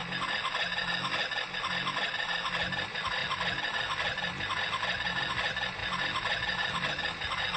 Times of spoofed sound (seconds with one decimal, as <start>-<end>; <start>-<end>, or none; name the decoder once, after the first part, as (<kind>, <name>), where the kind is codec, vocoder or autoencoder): none